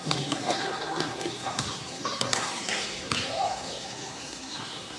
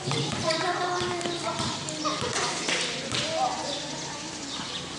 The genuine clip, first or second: second